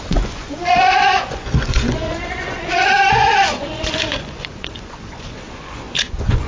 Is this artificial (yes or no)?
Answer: yes